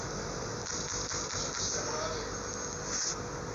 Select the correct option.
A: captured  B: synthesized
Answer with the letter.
A